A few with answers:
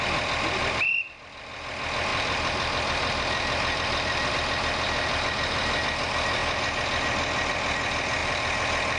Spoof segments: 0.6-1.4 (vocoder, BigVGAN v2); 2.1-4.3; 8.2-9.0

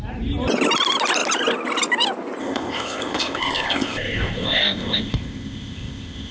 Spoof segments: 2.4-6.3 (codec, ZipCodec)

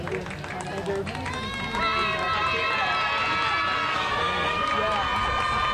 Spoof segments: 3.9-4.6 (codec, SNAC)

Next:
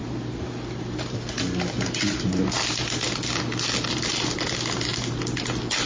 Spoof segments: none

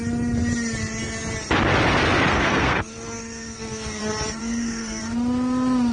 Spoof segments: 2.3-4.0 (codec, SNAC); 4.4-5.0

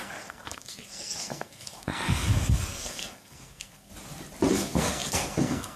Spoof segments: 0.0-3.9 (codec, SNAC); 4.5-5.8

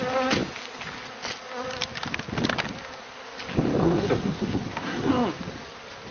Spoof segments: 3.8-5.1 (codec, SNAC)